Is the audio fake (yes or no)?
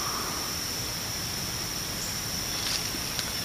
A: no